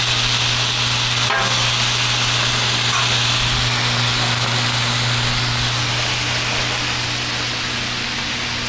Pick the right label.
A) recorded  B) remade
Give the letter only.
A